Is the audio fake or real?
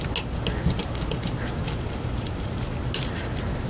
real